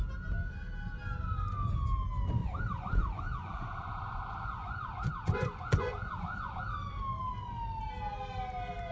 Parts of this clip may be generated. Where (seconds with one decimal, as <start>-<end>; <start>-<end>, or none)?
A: 2.4-6.6